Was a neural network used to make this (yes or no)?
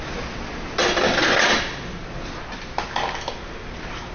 no